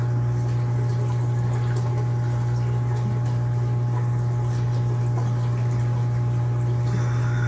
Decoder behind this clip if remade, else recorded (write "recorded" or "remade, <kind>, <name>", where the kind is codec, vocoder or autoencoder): recorded